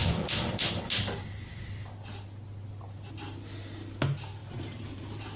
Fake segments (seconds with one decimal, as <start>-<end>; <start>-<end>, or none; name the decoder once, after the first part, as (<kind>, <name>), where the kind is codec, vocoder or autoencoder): 4.4-5.4 (vocoder, BigVGAN v2)